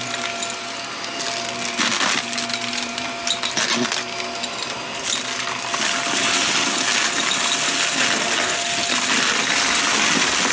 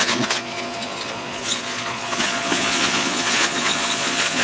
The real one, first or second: first